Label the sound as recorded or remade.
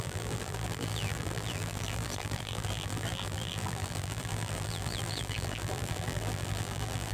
remade